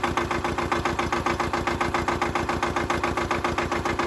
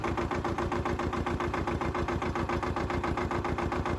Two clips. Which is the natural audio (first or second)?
first